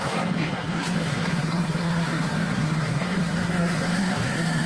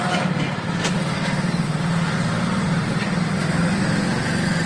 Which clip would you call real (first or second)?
second